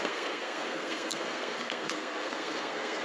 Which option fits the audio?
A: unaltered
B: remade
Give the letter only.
B